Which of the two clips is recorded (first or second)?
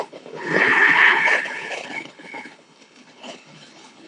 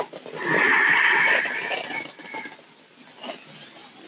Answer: second